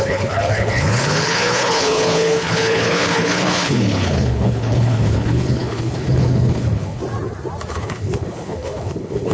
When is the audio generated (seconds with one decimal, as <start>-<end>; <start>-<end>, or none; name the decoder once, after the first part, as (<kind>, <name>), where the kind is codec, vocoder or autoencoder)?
0.0-7.0 (codec, HILCodec); 7.7-9.3